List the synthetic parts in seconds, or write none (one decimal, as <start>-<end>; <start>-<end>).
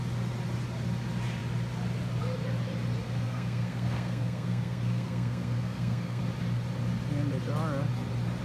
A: 3.0-6.2